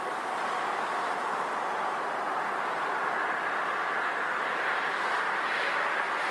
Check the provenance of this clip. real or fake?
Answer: real